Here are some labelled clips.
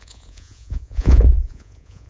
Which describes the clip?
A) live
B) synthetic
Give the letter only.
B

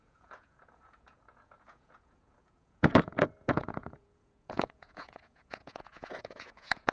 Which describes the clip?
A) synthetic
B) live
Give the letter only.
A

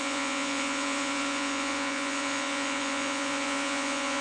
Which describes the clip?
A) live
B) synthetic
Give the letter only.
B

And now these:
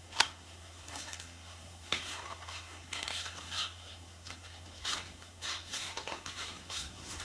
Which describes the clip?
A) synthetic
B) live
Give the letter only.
A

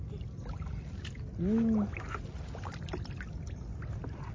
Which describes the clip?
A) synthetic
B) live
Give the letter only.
B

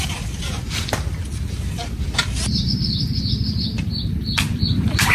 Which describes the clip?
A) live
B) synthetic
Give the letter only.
B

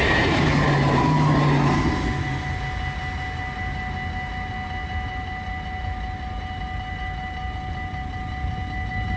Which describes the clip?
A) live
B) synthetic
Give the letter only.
A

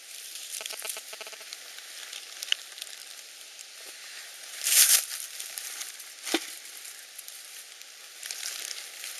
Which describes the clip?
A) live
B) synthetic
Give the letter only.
B